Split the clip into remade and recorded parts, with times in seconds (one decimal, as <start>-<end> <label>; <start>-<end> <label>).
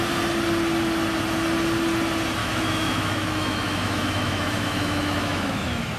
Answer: 0.0-2.4 recorded; 2.4-6.0 remade